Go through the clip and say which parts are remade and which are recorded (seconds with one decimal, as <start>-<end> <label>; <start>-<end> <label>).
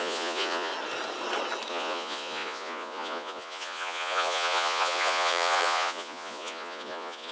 0.0-0.7 remade; 0.7-1.7 recorded; 1.7-7.3 remade